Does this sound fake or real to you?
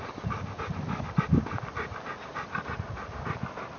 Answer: real